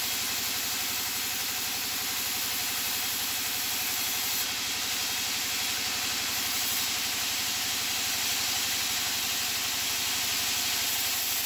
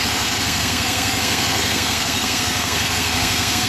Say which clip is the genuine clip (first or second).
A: first